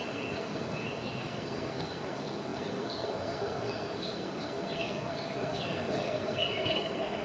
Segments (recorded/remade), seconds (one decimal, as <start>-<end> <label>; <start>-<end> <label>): 0.0-7.2 remade